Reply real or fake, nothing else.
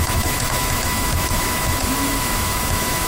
fake